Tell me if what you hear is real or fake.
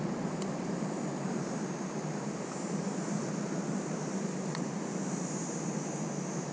real